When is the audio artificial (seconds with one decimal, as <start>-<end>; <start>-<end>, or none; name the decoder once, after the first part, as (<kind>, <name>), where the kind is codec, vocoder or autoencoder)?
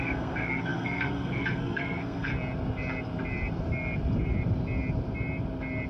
0.0-2.3 (codec, SNAC)